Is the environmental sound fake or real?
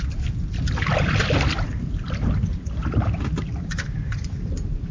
real